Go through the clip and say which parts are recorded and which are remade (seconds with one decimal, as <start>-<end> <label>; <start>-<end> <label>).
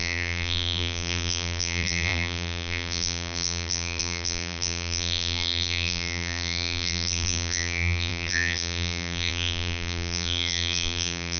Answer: 0.0-11.4 remade